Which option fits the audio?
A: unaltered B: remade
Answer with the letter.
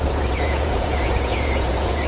B